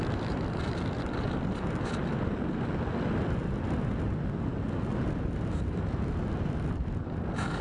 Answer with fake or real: real